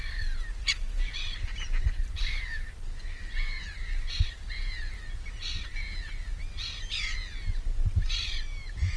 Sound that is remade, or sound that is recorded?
recorded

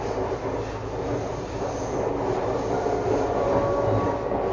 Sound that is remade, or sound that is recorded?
recorded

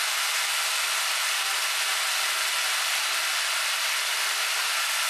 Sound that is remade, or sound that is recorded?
recorded